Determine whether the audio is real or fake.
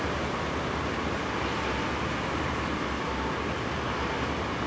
real